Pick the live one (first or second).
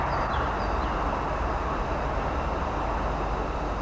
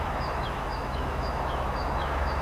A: first